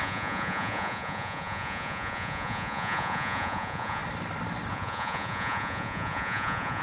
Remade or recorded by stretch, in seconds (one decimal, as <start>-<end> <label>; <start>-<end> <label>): 0.0-4.0 remade; 4.0-4.7 recorded; 4.7-6.8 remade